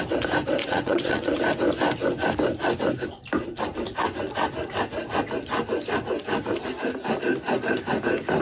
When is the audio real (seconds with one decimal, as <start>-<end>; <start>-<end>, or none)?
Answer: 0.0-0.6; 1.4-8.4